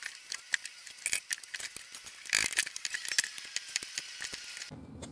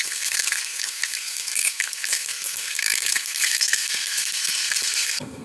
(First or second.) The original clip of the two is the first